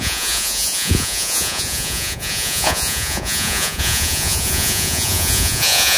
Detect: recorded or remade remade